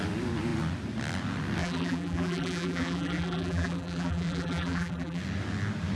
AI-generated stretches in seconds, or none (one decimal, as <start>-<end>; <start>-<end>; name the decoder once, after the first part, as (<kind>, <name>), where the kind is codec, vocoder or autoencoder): 1.6-5.2 (vocoder, BigVGAN v2)